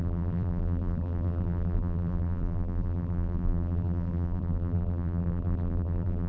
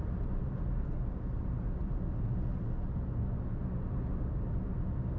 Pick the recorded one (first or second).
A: second